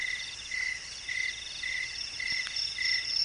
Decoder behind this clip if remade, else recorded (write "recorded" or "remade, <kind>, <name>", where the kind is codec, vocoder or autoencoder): recorded